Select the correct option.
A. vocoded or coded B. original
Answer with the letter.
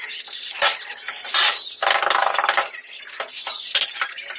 B